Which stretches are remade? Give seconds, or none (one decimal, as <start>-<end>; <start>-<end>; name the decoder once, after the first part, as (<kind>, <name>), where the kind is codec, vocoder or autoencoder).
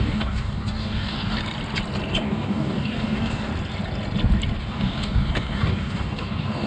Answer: 0.0-1.4 (codec, DAC); 2.2-3.5; 4.6-6.7